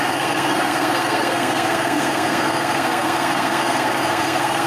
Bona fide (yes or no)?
no